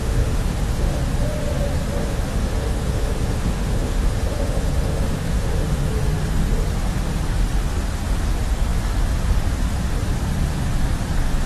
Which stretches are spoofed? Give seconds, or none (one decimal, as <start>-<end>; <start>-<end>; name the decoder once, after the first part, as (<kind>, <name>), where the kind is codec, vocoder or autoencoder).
0.0-1.0 (autoencoder, DAC-VAE); 2.0-5.9